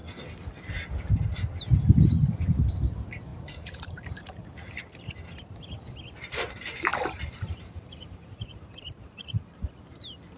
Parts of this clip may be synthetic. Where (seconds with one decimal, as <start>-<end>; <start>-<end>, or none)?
3.3-5.0; 6.9-9.6

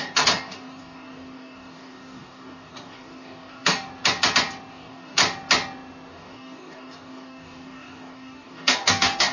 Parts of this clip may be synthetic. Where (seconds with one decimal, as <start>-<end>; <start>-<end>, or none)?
0.0-3.9; 4.7-5.2; 6.1-9.3